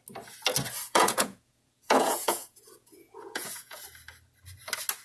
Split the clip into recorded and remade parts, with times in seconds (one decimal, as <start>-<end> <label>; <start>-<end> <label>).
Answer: 0.0-0.8 recorded; 0.8-3.8 remade; 3.8-5.0 recorded